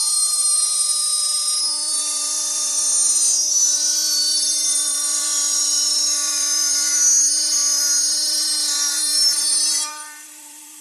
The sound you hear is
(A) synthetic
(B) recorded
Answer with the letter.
A